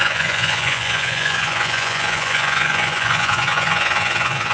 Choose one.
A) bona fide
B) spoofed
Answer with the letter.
B